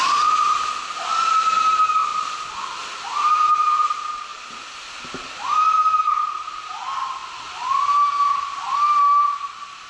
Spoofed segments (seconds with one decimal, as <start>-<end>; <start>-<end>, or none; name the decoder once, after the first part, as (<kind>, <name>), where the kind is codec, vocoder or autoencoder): none